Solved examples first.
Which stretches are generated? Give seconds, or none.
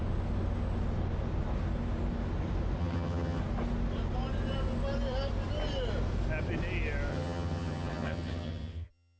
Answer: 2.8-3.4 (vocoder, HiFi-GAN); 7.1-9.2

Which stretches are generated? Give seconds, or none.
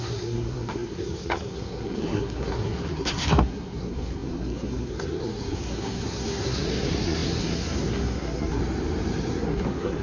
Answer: 0.0-8.6 (codec, SNAC); 9.3-10.0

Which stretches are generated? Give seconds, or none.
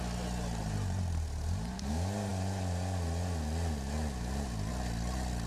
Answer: 0.6-1.9 (vocoder, BigVGAN v2)